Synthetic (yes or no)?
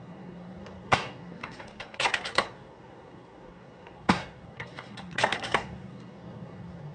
yes